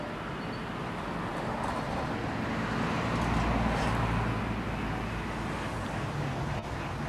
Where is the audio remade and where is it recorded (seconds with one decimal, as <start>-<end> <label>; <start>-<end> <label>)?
0.0-7.1 recorded